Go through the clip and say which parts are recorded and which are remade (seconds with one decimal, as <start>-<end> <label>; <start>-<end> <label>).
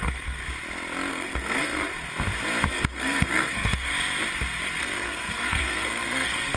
0.0-0.4 remade; 0.4-1.1 recorded; 1.1-1.9 remade; 1.9-2.7 recorded; 2.7-3.9 remade; 3.9-4.8 recorded; 4.8-6.6 remade